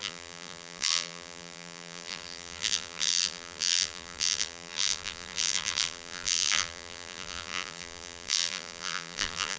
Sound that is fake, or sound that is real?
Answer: fake